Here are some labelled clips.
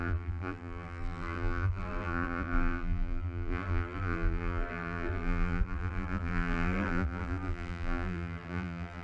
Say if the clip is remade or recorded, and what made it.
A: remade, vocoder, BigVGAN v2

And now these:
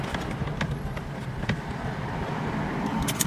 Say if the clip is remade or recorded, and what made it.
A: recorded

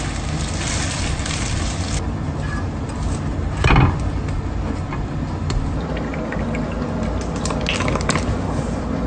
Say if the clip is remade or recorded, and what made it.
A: recorded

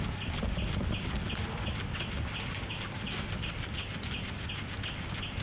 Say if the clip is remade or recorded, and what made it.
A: recorded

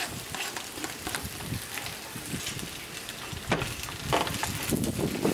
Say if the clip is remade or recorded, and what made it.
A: recorded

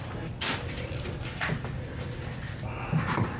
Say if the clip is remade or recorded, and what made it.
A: recorded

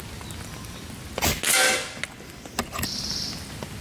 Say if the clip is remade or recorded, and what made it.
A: recorded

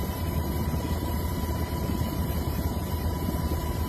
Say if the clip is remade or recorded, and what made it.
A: remade, vocoder, BigVGAN v2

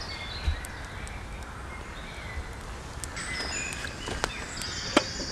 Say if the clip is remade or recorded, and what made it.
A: recorded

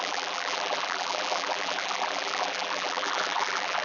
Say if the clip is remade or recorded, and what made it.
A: remade, vocoder, BigVGAN v2